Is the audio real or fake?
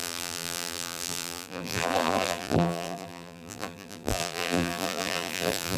fake